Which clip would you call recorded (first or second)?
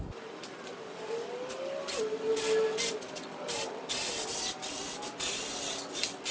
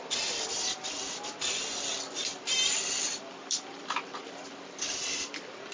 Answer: first